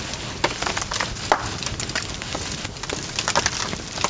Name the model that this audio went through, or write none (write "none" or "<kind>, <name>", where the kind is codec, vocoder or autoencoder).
none